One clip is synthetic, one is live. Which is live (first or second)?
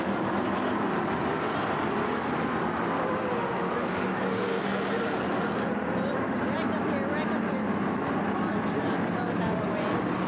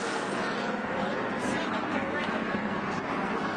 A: first